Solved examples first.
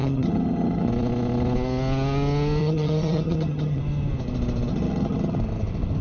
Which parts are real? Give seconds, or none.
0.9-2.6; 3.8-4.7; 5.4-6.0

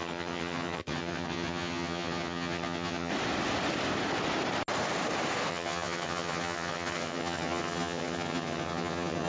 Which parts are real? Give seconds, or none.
3.1-5.5

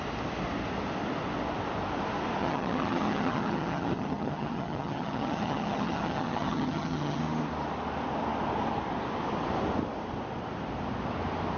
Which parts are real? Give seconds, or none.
0.0-2.4; 7.2-11.6

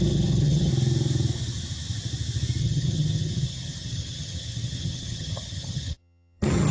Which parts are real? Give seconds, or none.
0.7-2.6

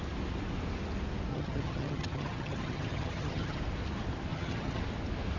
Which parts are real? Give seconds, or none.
0.0-1.3; 3.6-4.3; 4.8-5.4

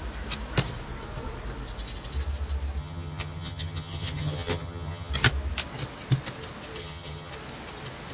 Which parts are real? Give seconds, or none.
0.0-2.8; 5.1-6.8; 7.3-8.1

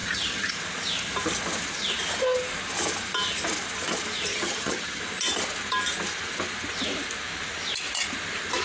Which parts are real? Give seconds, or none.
0.5-4.3; 5.0-8.6

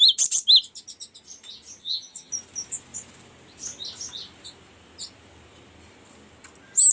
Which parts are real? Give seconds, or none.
0.0-1.8; 2.3-6.9